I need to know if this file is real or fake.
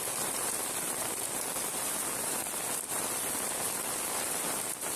real